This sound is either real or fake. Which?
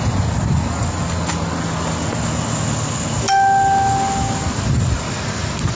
real